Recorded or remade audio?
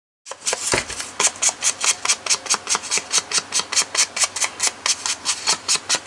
recorded